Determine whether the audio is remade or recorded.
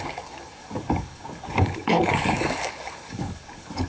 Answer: remade